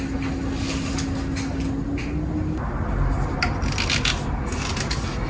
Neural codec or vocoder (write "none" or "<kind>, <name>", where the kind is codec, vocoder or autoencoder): none